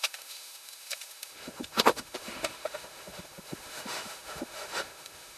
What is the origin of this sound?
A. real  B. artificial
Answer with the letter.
B